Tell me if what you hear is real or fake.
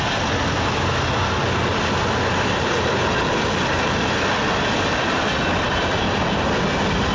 real